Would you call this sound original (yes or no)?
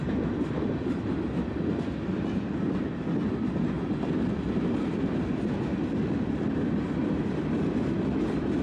no